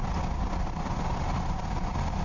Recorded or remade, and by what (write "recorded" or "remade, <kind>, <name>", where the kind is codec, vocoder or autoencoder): recorded